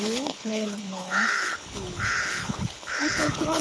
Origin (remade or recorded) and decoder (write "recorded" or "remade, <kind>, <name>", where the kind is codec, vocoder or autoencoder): remade, codec, HILCodec